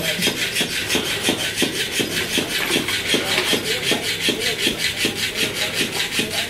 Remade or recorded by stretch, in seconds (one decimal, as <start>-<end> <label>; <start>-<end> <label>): 0.0-0.8 recorded; 0.8-2.0 remade; 2.0-3.5 recorded; 3.5-4.1 remade; 4.1-6.5 recorded